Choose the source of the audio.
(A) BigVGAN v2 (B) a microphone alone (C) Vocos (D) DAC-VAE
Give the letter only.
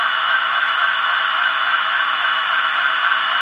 D